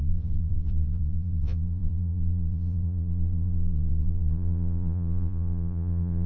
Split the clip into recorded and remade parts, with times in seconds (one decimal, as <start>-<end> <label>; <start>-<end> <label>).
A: 0.0-6.3 remade